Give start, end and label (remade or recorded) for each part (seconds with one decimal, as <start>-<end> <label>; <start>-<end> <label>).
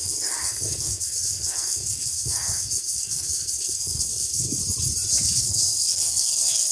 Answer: 0.0-4.6 remade; 4.6-5.4 recorded; 5.4-6.7 remade